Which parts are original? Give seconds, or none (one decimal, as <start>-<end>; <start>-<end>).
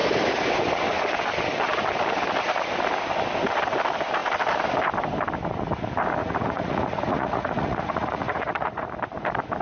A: 0.0-6.2; 8.9-9.6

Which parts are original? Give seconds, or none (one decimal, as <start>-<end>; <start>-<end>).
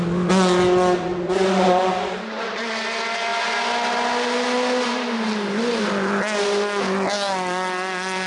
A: 0.0-1.1; 1.9-8.3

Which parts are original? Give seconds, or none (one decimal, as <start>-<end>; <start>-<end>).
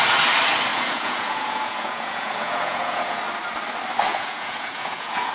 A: 0.0-0.7; 3.2-4.1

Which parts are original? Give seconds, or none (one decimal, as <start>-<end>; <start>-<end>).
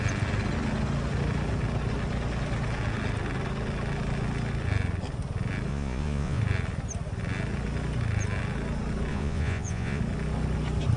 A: 0.0-5.7; 6.4-9.1; 10.0-11.0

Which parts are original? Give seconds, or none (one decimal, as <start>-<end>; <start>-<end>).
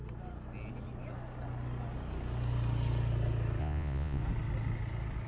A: 0.0-3.6; 4.2-5.3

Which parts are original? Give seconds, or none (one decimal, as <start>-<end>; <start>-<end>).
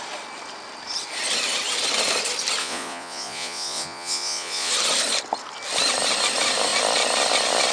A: 0.0-2.6; 4.7-7.7